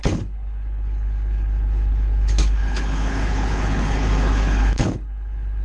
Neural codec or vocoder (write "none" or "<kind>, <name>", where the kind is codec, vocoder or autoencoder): codec, HILCodec